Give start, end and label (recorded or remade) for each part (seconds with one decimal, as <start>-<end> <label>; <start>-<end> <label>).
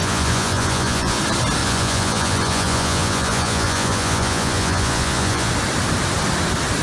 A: 0.0-1.2 remade; 1.2-1.6 recorded; 1.6-5.5 remade; 5.5-6.8 recorded